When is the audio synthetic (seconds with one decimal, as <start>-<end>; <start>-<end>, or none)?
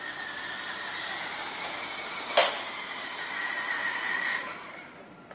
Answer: 0.9-1.7; 4.4-5.3